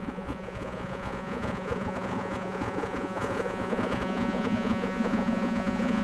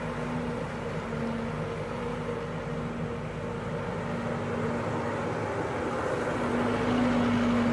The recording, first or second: second